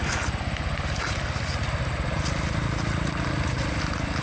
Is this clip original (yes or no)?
yes